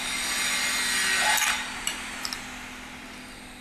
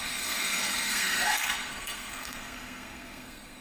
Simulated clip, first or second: second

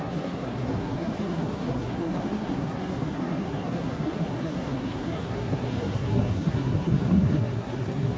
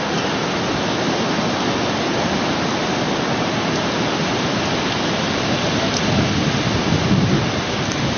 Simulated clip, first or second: first